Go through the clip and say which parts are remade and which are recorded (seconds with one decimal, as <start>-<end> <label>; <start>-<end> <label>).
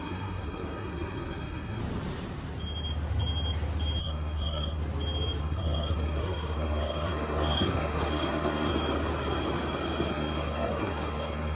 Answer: 0.0-1.8 remade; 1.8-4.0 recorded; 4.0-4.8 remade; 4.8-5.4 recorded; 5.4-8.7 remade; 8.7-10.1 recorded; 10.1-11.6 remade